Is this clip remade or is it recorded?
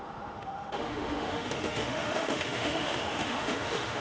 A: remade